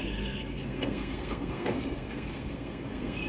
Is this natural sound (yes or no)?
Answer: no